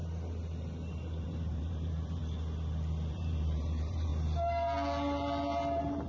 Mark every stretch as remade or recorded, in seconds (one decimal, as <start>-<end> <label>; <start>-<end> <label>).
0.0-1.2 recorded; 1.2-2.2 remade; 2.2-3.1 recorded; 3.1-4.1 remade; 4.1-6.1 recorded